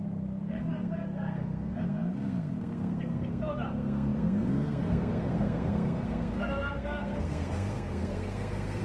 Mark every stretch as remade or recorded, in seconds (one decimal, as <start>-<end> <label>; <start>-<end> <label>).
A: 0.0-8.8 remade